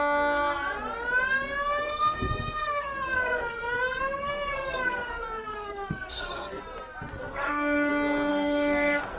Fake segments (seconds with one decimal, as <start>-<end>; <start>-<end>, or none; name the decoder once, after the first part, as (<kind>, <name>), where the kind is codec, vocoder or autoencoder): 1.8-6.6 (codec, SNAC); 7.2-7.9; 8.3-9.2